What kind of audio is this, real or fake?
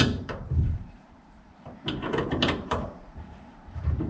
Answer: fake